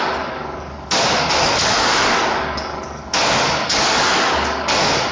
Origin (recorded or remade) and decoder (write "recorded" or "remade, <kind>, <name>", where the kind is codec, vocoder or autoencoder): remade, codec, DAC